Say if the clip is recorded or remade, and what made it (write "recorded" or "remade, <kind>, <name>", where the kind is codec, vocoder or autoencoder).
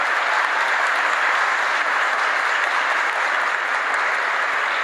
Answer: recorded